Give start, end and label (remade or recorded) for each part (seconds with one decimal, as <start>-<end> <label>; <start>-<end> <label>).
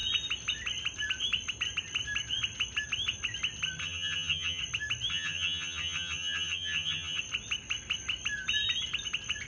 0.0-3.8 recorded; 3.8-4.6 remade; 4.6-5.1 recorded; 5.1-7.2 remade; 7.2-9.5 recorded